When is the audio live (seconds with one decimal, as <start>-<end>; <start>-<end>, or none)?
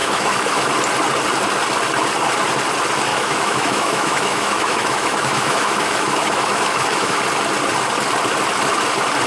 0.7-3.1; 7.2-9.3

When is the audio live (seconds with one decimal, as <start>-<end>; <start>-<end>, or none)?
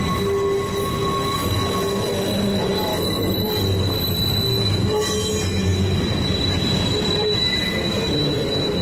0.0-2.9; 3.5-8.8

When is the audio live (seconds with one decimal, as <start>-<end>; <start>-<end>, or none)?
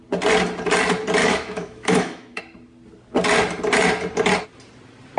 0.0-1.2; 2.4-5.2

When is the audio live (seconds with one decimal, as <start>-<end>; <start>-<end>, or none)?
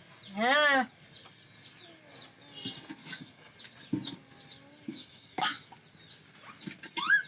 0.0-3.0; 3.5-4.9; 5.7-7.3